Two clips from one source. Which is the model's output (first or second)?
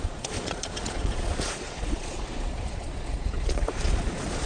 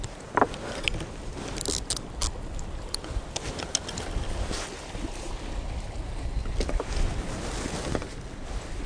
first